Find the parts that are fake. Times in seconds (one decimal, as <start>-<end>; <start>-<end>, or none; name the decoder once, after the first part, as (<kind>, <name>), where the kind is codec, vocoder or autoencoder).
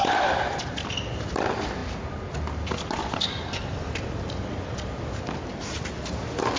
none